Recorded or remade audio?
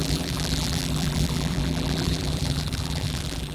remade